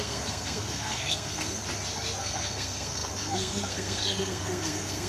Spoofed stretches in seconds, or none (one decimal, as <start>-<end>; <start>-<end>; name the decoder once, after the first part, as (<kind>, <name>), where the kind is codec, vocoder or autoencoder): 0.0-1.6 (codec, SNAC); 2.2-5.1